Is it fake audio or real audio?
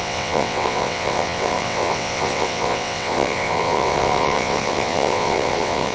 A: fake